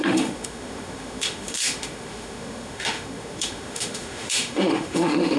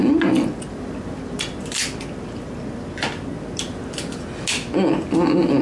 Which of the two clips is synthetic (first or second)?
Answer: first